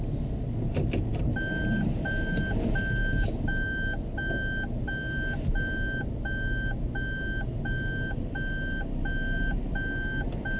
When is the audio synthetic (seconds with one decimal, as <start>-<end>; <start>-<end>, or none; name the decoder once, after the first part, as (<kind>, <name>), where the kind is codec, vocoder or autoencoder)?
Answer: none